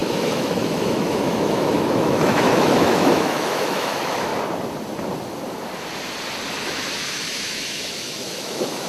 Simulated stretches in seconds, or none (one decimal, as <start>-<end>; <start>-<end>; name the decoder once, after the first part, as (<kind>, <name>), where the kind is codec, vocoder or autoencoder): 0.0-4.3 (autoencoder, DAC-VAE); 6.6-8.9